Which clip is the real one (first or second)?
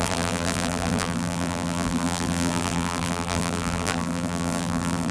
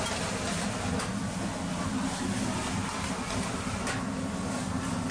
second